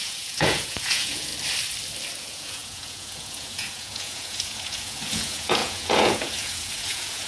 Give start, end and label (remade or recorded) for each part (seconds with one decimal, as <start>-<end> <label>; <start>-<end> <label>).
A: 0.0-1.3 remade; 1.3-2.2 recorded; 2.2-7.3 remade